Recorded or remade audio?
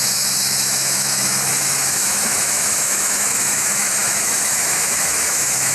remade